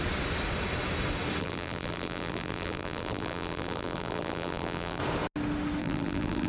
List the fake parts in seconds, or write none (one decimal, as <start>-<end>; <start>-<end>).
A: 1.4-5.0; 5.8-6.5